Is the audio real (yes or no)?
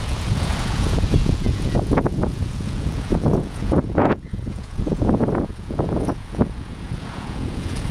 no